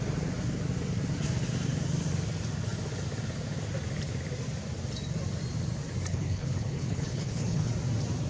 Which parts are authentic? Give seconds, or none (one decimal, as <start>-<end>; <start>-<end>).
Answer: 0.0-6.1; 7.7-8.3